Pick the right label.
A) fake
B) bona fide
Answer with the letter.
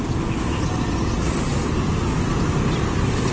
B